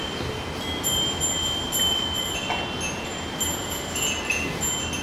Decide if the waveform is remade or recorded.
recorded